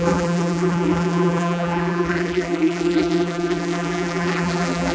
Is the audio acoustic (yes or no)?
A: no